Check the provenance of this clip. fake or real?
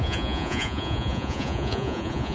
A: fake